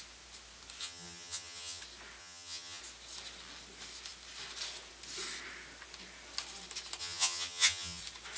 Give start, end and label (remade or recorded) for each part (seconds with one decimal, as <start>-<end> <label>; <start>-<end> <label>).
0.0-0.8 recorded; 0.8-1.8 remade; 1.8-2.2 recorded; 2.2-2.8 remade; 2.8-7.0 recorded; 7.0-8.0 remade; 8.0-8.4 recorded